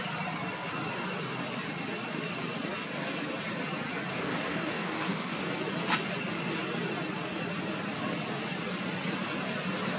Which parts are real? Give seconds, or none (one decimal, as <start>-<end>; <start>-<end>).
0.0-4.1; 5.5-10.0